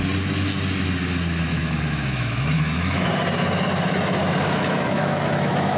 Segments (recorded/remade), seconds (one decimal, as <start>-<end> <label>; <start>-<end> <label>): 0.0-1.5 recorded; 1.5-3.1 remade; 3.1-4.2 recorded; 4.2-5.8 remade